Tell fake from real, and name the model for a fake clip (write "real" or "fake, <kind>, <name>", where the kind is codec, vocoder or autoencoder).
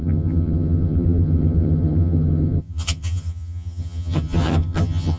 fake, vocoder, HiFi-GAN